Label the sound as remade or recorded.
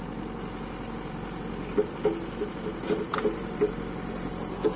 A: recorded